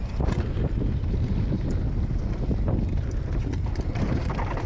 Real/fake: real